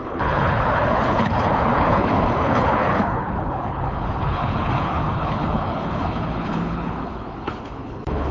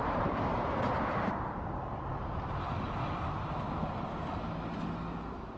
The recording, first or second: second